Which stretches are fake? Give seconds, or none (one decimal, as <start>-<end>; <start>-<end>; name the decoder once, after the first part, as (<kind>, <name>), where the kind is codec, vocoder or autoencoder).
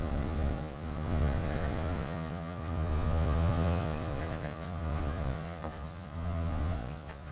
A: 0.0-7.3 (vocoder, Vocos)